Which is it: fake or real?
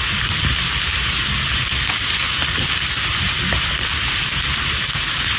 real